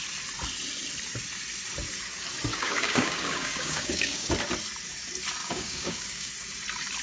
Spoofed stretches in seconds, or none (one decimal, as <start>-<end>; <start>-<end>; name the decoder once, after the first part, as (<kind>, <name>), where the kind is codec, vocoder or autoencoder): 2.5-4.3 (codec, DAC); 5.4-6.3